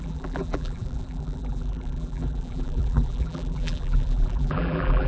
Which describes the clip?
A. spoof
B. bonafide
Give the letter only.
A